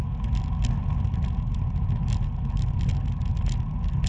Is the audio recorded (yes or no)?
yes